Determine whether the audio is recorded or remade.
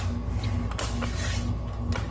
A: recorded